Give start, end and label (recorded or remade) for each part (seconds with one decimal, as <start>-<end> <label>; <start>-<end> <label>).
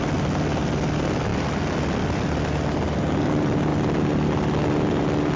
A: 0.0-5.4 recorded